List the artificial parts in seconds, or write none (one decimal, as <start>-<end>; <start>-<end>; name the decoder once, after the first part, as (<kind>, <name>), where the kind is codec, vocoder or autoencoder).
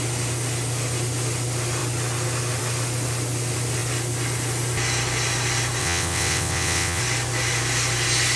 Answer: 5.8-7.0 (vocoder, WaveNeXt)